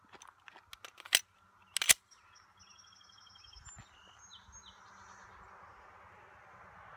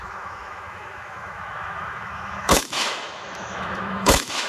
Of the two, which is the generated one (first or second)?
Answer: second